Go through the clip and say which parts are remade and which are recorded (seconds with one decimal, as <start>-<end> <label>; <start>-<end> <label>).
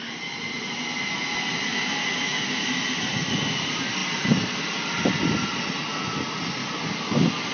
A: 0.0-7.5 recorded